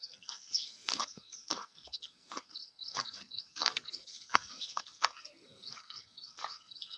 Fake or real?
fake